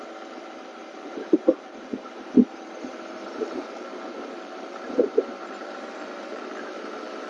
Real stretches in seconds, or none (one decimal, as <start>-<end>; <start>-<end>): none